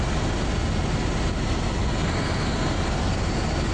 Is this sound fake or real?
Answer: real